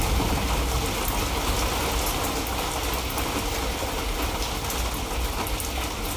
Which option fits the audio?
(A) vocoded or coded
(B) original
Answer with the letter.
B